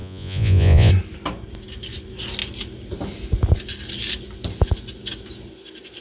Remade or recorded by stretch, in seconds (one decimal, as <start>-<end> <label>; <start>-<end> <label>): 0.0-0.9 remade; 0.9-6.0 recorded